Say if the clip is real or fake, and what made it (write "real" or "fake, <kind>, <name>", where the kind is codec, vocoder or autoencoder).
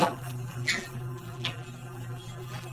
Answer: fake, vocoder, BigVGAN v2